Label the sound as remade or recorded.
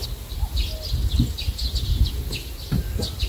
recorded